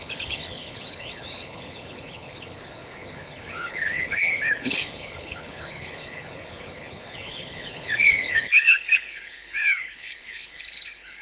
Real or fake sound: fake